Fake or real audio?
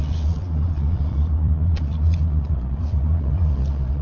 fake